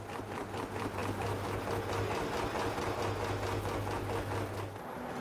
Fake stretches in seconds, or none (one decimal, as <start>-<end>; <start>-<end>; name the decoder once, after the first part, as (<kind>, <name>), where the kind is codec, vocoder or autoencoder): none